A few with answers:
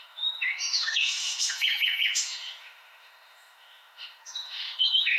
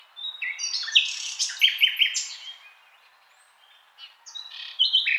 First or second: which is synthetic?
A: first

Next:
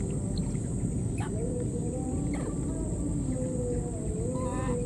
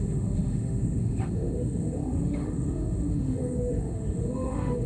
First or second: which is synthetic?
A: second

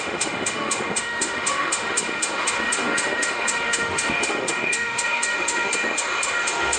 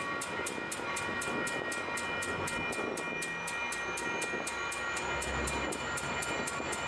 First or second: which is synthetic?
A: first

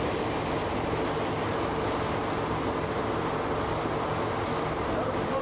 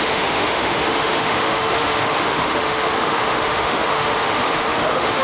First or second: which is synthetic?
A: second